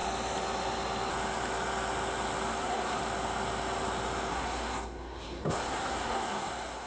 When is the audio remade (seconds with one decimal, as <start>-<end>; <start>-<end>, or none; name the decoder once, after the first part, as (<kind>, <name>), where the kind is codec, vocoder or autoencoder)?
2.6-3.0 (codec, SNAC); 4.3-6.9

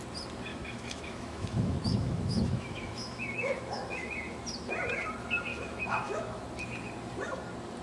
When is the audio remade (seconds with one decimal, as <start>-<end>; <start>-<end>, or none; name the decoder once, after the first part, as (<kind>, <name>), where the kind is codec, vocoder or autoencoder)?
0.5-4.1 (autoencoder, DAC-VAE); 5.5-6.4

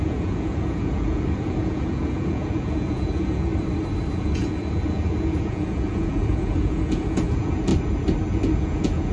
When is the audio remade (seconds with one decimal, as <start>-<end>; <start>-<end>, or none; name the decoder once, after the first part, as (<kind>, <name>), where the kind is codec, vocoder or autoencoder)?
0.0-3.5 (vocoder, Vocos); 4.1-7.7; 8.3-9.1

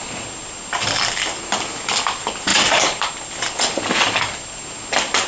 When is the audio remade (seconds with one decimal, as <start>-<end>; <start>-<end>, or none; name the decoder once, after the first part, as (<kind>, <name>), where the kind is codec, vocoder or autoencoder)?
none

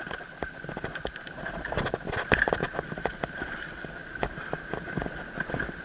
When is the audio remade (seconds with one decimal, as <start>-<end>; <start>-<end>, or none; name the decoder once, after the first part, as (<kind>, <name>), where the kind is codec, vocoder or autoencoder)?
4.0-4.8 (vocoder, BigVGAN v2)

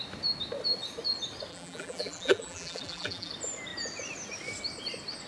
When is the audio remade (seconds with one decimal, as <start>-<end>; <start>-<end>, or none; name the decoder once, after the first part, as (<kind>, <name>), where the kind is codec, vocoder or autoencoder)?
1.5-3.3 (vocoder, BigVGAN v2)

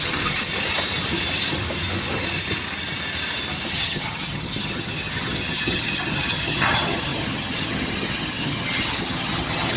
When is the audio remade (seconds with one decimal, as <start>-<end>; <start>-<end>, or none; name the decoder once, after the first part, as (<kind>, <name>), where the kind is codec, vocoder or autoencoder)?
0.0-0.5 (vocoder, HiFi-GAN); 3.7-9.8